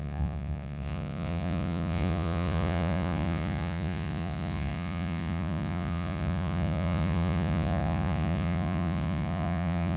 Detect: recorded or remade remade